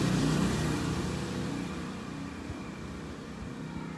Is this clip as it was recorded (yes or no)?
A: no